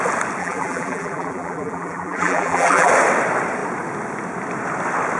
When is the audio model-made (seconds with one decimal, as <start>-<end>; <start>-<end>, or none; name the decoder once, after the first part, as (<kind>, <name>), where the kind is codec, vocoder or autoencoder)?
0.4-2.9 (vocoder, BigVGAN v2)